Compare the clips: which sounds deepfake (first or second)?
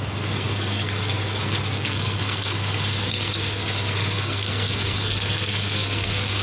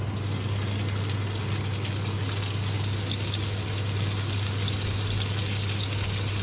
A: first